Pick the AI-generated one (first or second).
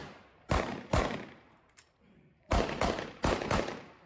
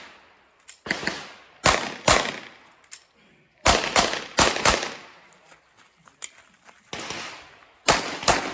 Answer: first